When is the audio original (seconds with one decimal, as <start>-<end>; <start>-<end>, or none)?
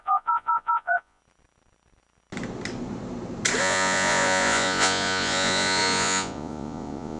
1.2-3.6